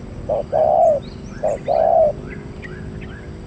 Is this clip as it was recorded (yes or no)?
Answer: yes